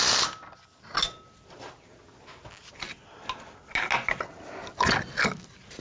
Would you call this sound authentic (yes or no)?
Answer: yes